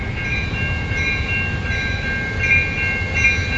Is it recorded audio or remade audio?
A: recorded